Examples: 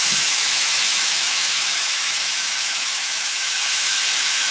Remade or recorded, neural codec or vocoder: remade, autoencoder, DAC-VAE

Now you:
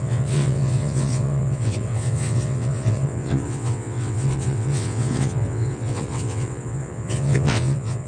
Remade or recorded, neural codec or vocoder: remade, vocoder, WaveNeXt